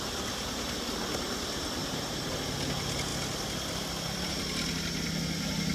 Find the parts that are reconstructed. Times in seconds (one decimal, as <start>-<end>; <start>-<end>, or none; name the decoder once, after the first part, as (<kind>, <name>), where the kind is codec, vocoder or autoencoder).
1.8-2.3 (vocoder, BigVGAN v2)